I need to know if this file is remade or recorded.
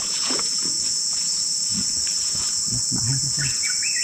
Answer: remade